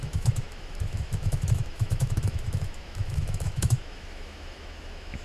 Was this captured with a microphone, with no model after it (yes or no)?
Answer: no